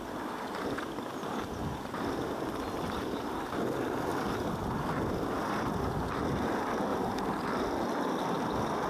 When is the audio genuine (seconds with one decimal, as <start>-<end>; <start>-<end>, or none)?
0.0-8.9